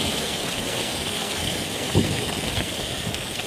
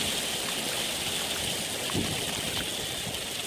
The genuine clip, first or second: second